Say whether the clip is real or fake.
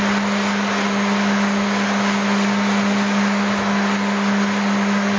real